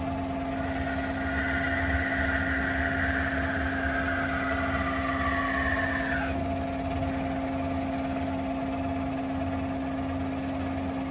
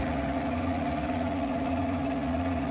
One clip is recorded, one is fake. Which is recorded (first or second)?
first